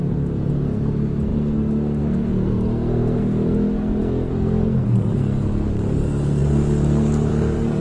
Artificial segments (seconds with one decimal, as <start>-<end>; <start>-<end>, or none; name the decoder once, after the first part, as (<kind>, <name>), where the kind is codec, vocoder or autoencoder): 0.0-7.8 (codec, SNAC)